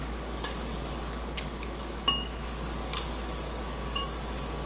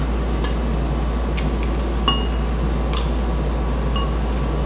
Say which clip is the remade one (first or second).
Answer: first